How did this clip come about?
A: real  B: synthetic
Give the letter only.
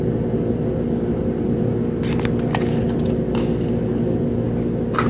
A